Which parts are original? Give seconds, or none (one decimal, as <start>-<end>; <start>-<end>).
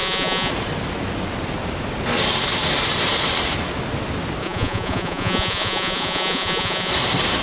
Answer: 0.5-4.4; 6.9-7.4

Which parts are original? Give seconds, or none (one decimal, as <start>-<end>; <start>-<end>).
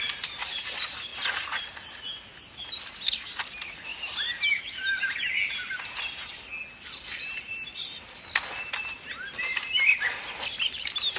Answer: 0.0-1.1; 1.7-11.2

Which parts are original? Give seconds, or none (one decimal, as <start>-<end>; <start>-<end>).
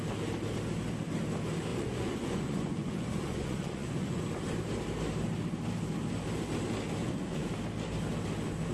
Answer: 0.0-1.7; 4.2-7.0; 7.5-8.7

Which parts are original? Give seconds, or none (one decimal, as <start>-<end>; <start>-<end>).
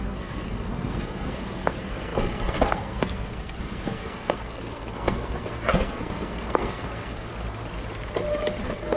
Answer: 7.3-8.6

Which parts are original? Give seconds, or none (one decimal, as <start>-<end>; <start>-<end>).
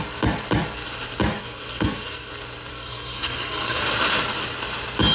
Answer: 0.0-1.4; 2.3-2.7; 3.8-5.1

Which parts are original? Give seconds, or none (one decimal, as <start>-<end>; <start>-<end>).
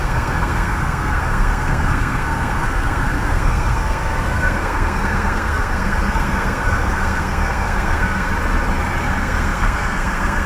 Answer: 8.3-9.0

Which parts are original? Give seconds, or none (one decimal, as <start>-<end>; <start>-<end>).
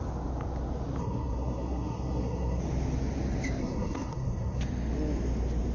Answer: 0.0-1.0; 2.6-3.6; 4.6-5.7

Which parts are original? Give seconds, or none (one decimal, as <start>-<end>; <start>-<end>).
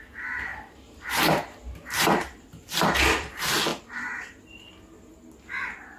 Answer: 0.0-0.5; 3.3-3.7; 4.4-6.0